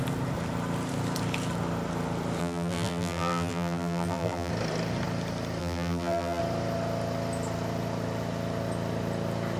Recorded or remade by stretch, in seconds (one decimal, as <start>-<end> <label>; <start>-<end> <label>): 0.0-2.4 recorded; 2.4-4.5 remade; 4.5-5.6 recorded; 5.6-6.4 remade; 6.4-9.6 recorded